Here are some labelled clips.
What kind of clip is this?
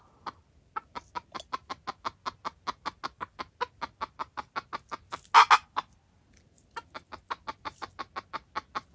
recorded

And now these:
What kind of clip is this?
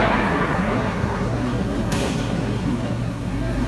remade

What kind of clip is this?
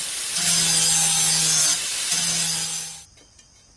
recorded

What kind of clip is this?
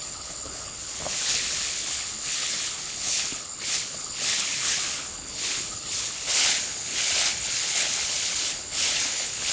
remade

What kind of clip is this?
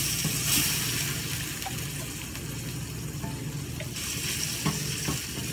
recorded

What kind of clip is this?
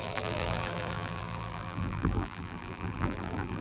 remade